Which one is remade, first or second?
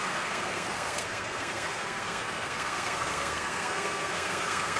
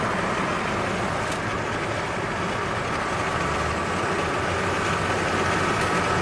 first